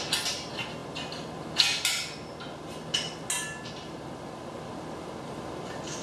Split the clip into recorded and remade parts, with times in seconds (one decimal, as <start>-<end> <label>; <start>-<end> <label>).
0.0-6.0 recorded

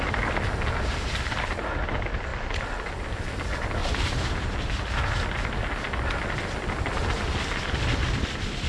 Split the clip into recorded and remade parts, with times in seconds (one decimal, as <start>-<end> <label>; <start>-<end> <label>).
0.0-3.8 recorded; 3.8-4.7 remade; 4.7-8.7 recorded

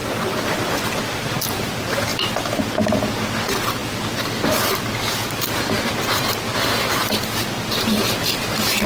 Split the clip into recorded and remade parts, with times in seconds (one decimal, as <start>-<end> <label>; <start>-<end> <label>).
0.0-0.8 remade; 0.8-2.1 recorded; 2.1-2.6 remade; 2.6-3.8 recorded; 3.8-5.8 remade; 5.8-7.0 recorded; 7.0-8.0 remade; 8.0-8.9 recorded

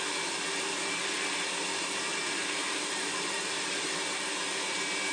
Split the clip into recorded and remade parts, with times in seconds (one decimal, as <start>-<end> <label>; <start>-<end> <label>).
0.0-2.1 recorded; 2.1-3.9 remade; 3.9-5.1 recorded

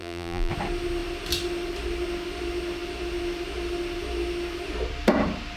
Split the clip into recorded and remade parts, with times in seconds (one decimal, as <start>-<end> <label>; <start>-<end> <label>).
0.0-0.5 remade; 0.5-5.6 recorded